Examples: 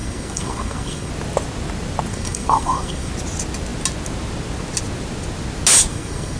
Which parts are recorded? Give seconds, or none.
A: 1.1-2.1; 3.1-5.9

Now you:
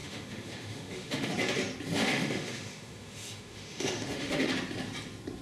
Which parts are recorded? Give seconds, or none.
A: 1.3-2.0; 4.5-5.4

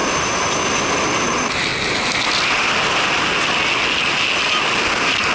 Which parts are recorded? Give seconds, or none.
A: 0.0-5.3

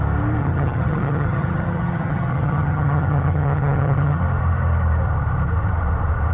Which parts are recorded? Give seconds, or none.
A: 0.0-0.4; 4.2-6.3